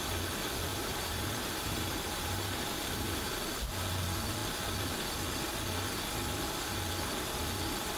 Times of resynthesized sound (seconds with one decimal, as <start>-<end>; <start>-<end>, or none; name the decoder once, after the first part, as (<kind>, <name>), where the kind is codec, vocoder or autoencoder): 0.7-3.3 (vocoder, BigVGAN v2)